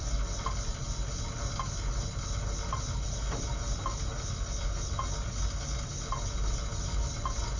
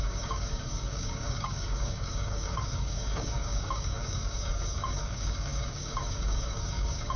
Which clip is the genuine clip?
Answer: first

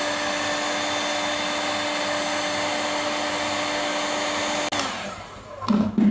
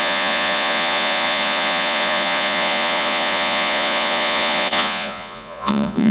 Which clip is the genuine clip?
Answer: first